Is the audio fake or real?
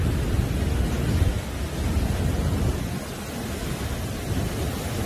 real